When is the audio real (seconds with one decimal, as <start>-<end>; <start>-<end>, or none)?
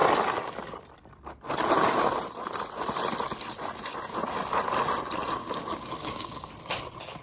0.0-5.4; 6.5-7.2